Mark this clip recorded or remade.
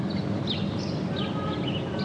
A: recorded